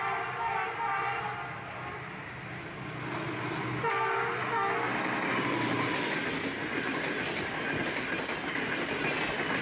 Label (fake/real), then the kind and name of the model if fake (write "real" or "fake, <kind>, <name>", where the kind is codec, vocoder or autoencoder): real